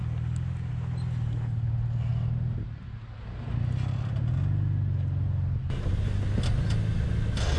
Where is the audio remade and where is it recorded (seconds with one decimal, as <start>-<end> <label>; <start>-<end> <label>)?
0.0-7.6 recorded